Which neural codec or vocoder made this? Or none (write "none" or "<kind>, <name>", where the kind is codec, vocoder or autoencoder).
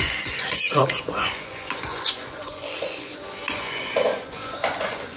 vocoder, Vocos